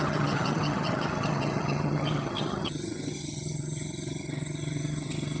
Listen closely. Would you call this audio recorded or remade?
remade